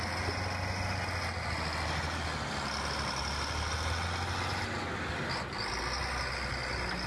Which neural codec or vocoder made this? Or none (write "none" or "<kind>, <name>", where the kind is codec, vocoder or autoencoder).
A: none